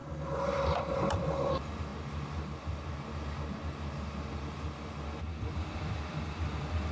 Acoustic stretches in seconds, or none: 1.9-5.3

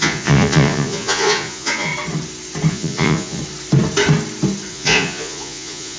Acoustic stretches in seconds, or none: 1.9-2.7; 3.4-4.7

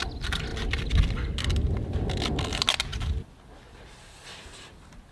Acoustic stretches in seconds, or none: 0.0-5.1

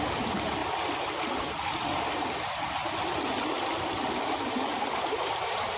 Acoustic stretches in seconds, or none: 0.6-4.1

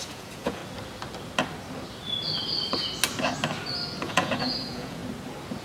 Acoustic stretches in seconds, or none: 0.6-4.0; 5.0-5.6

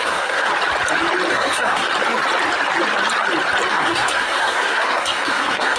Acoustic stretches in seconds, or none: 0.5-1.3; 1.9-3.7